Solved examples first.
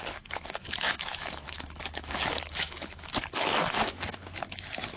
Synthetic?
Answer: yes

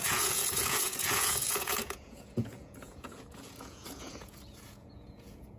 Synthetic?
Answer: yes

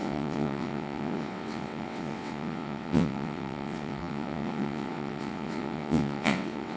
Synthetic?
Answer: yes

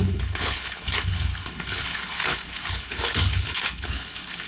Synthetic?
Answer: yes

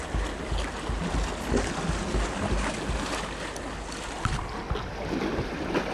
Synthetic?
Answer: no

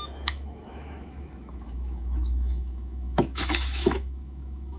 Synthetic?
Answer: yes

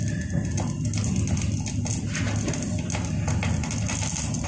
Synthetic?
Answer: no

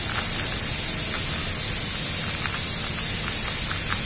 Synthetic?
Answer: no